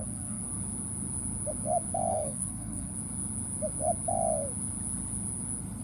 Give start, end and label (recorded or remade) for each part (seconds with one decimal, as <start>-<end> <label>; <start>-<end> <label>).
0.0-0.4 remade; 0.4-2.1 recorded; 2.1-2.9 remade; 2.9-5.8 recorded